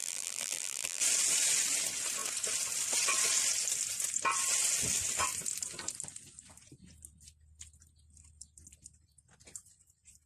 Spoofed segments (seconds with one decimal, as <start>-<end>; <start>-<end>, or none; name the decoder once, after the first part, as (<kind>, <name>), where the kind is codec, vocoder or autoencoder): 0.0-1.0 (vocoder, BigVGAN v2)